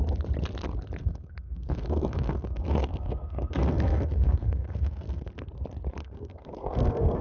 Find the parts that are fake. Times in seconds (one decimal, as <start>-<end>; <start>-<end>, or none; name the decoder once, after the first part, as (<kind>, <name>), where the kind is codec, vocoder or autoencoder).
1.0-5.3 (codec, SNAC); 6.0-7.2